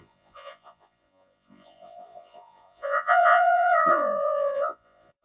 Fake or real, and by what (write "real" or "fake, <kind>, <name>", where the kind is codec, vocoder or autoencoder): fake, vocoder, Vocos